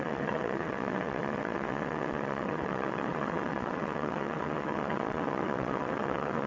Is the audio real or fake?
fake